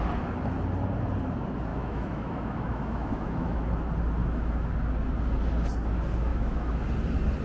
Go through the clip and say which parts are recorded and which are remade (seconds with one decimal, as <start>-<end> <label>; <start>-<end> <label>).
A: 0.0-1.7 recorded; 1.7-3.7 remade; 3.7-4.2 recorded; 4.2-4.7 remade; 4.7-6.3 recorded; 6.3-6.9 remade; 6.9-7.4 recorded